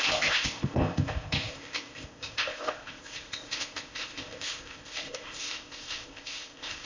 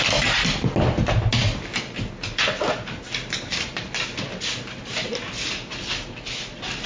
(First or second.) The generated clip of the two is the first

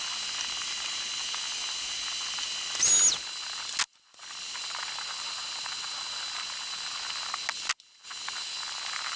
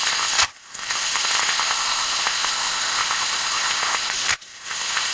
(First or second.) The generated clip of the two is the second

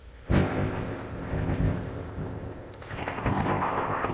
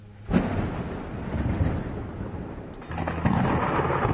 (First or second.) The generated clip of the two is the first